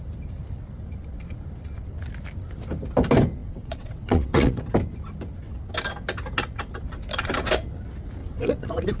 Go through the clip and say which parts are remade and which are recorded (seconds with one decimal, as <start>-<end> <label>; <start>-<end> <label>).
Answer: 0.0-3.4 recorded; 3.4-4.6 remade; 4.6-8.2 recorded; 8.2-9.0 remade